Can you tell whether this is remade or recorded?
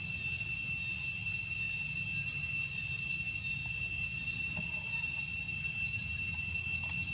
recorded